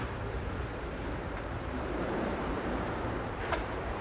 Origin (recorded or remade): remade